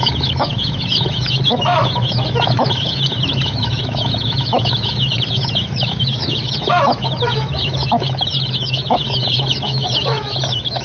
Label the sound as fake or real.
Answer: fake